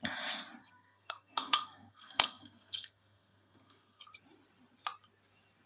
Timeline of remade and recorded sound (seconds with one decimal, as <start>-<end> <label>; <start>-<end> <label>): 0.0-0.6 recorded; 0.6-4.0 remade; 4.0-5.7 recorded